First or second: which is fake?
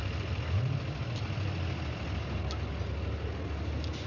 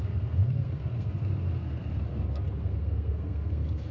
second